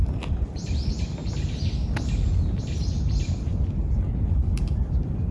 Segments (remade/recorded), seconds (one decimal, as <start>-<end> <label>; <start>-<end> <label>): 0.0-5.3 recorded